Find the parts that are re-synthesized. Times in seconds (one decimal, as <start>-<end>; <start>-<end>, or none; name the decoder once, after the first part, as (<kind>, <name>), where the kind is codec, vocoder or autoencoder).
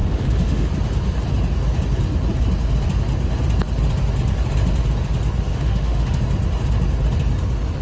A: 0.0-0.7 (autoencoder, DAC-VAE); 5.5-6.2